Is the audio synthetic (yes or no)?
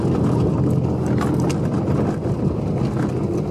no